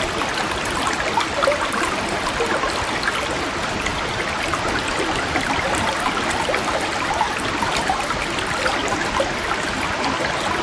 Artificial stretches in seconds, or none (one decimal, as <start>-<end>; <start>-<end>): none